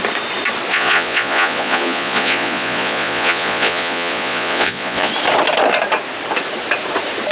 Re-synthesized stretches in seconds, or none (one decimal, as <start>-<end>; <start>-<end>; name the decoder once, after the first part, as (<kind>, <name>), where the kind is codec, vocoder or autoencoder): 0.7-5.1 (vocoder, Vocos)